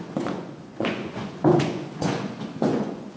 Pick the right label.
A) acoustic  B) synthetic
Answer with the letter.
B